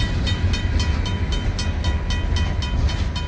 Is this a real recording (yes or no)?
yes